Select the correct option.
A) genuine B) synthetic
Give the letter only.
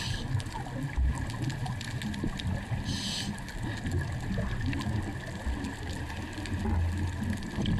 A